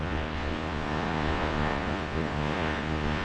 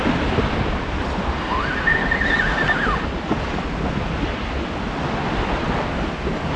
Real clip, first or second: second